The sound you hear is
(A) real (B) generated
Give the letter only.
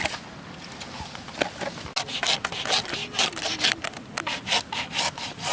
A